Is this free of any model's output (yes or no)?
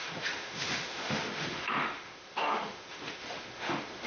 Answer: no